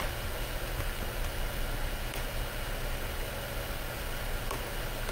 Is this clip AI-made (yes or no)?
no